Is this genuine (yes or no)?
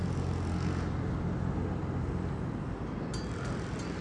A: yes